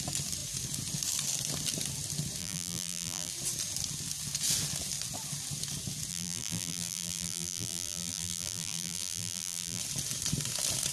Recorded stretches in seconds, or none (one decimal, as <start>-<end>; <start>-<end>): 0.0-2.4; 3.3-6.1; 9.8-10.9